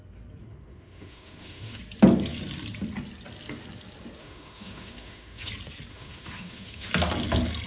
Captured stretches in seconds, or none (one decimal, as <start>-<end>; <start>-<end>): 0.0-0.4; 1.8-4.2; 5.5-5.9; 6.9-7.7